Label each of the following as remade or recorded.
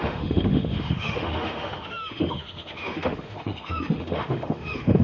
remade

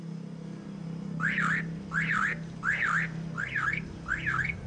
recorded